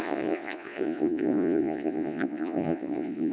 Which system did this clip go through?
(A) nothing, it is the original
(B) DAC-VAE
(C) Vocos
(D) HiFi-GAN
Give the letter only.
C